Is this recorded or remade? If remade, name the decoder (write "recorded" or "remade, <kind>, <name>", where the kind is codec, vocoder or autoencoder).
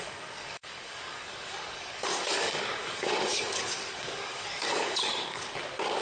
remade, codec, DAC